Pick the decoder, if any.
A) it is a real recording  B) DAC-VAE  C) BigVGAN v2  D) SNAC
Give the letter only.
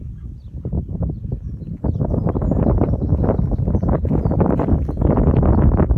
A